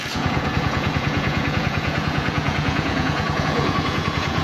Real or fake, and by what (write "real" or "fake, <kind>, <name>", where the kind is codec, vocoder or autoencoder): fake, vocoder, Vocos